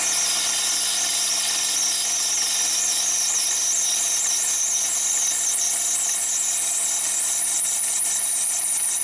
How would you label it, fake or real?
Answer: real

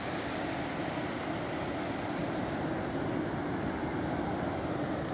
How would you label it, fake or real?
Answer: real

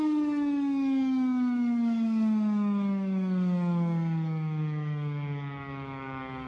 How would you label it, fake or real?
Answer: fake